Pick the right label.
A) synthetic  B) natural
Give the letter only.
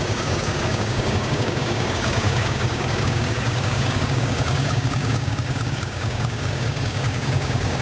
A